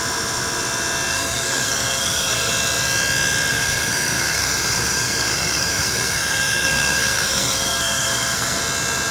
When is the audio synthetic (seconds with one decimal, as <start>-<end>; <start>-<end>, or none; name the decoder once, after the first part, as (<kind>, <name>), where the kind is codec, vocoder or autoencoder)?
1.1-2.5 (codec, SNAC); 3.5-8.6